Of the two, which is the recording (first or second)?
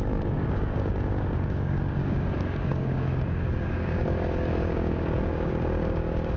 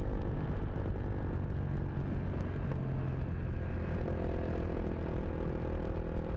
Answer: second